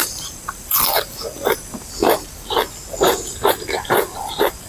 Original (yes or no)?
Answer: no